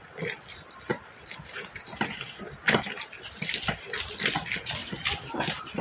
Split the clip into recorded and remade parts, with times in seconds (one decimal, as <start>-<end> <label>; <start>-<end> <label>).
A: 0.0-0.9 recorded; 0.9-2.4 remade; 2.4-4.8 recorded; 4.8-5.8 remade